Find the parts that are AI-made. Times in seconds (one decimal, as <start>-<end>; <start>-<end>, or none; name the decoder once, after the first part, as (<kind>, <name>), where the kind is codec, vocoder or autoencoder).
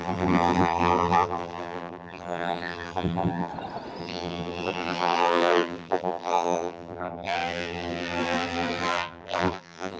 0.0-3.5 (vocoder, BigVGAN v2); 4.0-10.0